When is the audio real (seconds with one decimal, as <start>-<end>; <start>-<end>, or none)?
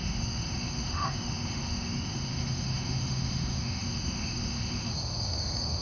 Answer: none